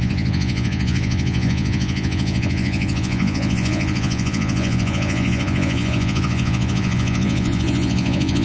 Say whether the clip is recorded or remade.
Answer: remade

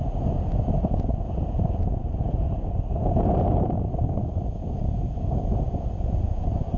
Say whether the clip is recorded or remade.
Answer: remade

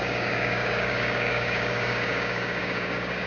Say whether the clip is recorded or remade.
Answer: remade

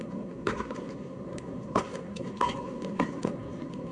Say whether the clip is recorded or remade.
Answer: remade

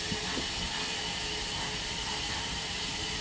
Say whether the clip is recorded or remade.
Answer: recorded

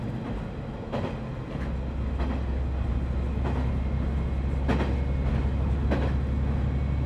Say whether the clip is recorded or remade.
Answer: recorded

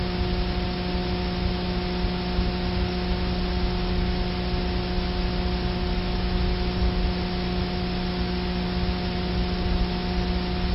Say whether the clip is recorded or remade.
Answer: recorded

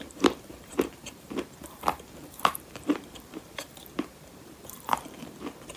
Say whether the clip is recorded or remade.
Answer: remade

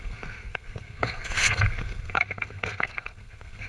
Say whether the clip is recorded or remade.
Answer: remade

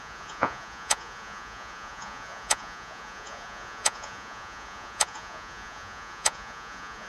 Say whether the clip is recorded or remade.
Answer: remade